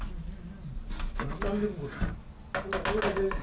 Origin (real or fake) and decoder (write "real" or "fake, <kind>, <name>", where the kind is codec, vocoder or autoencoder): real